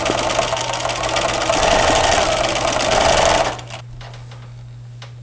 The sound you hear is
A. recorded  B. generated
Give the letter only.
A